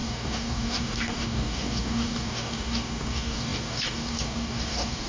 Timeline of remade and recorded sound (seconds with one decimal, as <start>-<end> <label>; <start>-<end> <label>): 0.0-5.1 remade